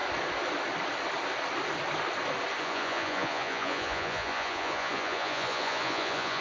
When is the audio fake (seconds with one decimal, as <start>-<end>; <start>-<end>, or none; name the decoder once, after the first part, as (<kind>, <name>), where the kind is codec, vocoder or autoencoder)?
2.6-6.4 (vocoder, Vocos)